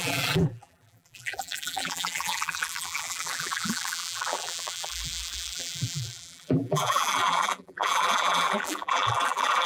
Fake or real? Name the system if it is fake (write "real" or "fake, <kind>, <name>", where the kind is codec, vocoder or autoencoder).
fake, vocoder, BigVGAN v2